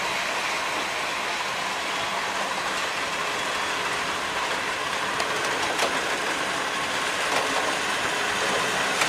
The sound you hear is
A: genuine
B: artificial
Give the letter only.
A